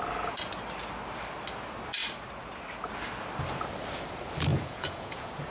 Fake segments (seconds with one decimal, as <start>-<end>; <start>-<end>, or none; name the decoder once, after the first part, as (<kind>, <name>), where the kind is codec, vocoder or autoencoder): 4.5-5.5 (vocoder, Vocos)